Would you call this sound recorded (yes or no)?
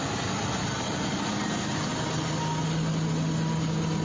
yes